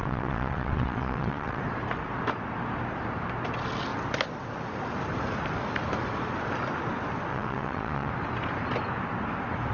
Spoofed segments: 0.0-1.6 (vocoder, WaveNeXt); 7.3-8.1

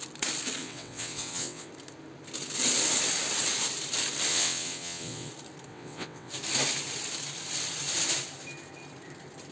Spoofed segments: 0.6-1.7 (vocoder, WaveNeXt); 4.3-5.3; 5.7-6.3